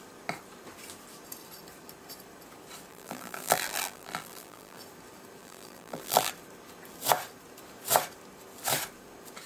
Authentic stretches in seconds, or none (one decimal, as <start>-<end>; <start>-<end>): 0.0-2.9; 4.8-5.4; 6.3-9.5